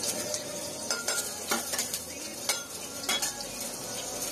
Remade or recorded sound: recorded